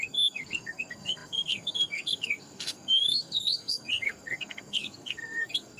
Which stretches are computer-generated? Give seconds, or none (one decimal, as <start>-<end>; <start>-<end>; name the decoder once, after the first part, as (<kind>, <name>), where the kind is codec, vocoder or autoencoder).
0.0-5.8 (codec, SNAC)